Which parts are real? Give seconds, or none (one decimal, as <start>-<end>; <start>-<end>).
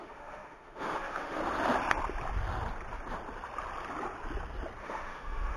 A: 1.4-4.8